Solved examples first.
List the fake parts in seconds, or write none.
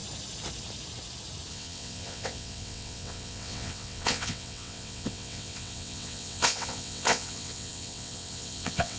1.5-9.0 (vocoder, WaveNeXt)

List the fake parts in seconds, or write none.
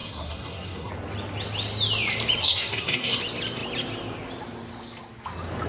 0.0-0.9 (codec, SNAC); 2.4-3.2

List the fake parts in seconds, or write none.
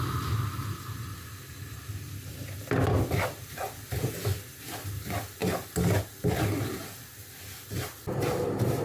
none